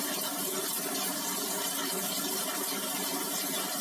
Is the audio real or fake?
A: real